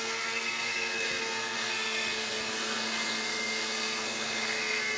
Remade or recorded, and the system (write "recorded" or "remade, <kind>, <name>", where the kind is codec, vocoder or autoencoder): remade, codec, SNAC